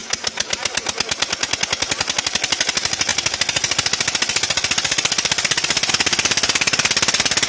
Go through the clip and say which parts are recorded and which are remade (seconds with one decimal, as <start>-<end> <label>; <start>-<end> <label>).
0.0-3.1 recorded; 3.1-5.9 remade; 5.9-7.5 recorded